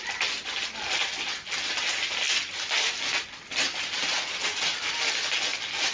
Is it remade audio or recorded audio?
recorded